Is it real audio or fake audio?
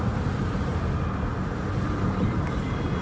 real